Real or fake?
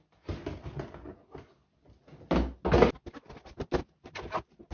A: real